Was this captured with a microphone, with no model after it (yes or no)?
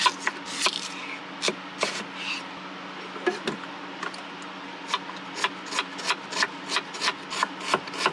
yes